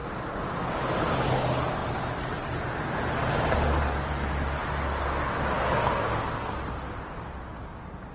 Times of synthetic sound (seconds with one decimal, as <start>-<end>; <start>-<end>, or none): 1.8-4.6